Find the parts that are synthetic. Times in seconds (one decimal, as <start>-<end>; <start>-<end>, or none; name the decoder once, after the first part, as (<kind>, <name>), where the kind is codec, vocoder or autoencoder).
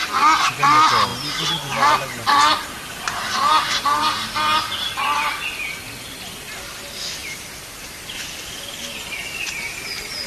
1.1-4.4 (vocoder, BigVGAN v2); 7.2-8.4